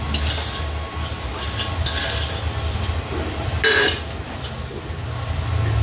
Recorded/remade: recorded